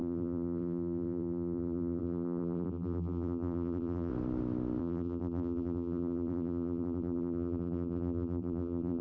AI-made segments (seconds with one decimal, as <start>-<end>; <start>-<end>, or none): 0.0-4.1; 4.8-9.0